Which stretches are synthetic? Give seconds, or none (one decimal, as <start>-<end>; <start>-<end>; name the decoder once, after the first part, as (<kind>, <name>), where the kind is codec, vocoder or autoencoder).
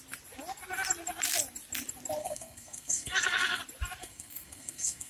2.2-3.6 (codec, SNAC); 4.0-5.1